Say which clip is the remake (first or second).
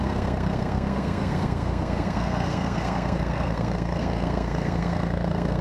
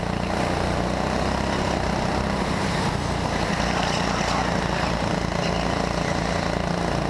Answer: first